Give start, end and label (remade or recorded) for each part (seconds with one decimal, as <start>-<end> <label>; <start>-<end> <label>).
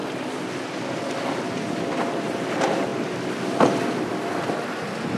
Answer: 0.0-1.0 recorded; 1.0-5.2 remade